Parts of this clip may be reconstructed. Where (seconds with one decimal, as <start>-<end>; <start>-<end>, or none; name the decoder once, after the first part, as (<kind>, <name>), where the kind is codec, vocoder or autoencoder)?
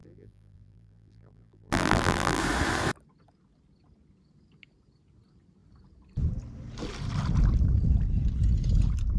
0.0-2.4 (vocoder, BigVGAN v2)